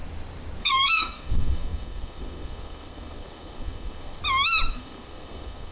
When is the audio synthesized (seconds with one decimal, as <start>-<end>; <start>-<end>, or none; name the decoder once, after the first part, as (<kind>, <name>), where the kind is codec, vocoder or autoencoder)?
0.6-4.2 (codec, SNAC); 4.7-5.7